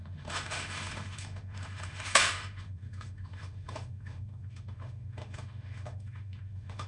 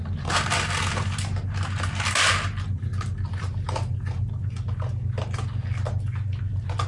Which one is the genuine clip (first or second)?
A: second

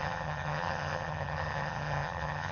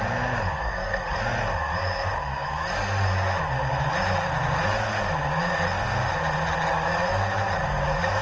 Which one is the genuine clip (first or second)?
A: second